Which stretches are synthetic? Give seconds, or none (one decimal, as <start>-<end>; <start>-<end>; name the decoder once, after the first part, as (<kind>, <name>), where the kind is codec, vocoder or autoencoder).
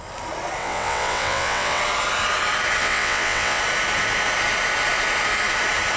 0.6-1.8 (vocoder, WaveNeXt); 2.8-3.6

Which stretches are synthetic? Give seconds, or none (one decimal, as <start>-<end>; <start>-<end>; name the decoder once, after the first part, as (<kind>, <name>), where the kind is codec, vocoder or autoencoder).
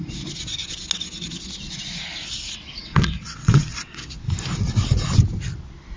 2.8-4.2 (vocoder, WaveNeXt)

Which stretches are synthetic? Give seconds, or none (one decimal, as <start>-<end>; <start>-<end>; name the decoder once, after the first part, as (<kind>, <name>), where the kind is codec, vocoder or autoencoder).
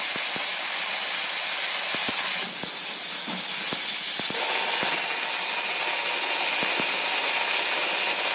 none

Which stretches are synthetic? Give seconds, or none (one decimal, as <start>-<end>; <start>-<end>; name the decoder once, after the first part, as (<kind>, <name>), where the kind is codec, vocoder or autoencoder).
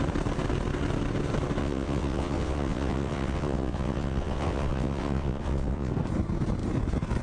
1.6-5.9 (vocoder, WaveNeXt)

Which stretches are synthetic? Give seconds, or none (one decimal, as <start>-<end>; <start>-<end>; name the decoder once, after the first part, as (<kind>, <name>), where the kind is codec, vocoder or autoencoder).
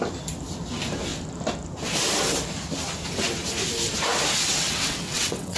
4.5-5.6 (vocoder, WaveNeXt)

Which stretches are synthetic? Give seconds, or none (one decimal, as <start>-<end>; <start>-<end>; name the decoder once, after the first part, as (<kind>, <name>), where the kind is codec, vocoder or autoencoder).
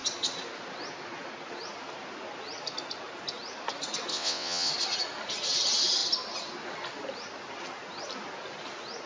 4.1-4.7 (vocoder, WaveNeXt)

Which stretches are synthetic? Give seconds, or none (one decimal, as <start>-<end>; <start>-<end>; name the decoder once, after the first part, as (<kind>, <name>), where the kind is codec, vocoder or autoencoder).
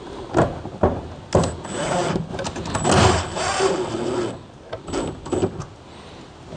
none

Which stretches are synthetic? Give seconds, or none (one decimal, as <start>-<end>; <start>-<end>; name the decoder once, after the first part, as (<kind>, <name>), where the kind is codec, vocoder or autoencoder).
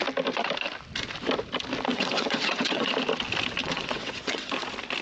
1.9-2.9 (vocoder, WaveNeXt); 3.6-4.5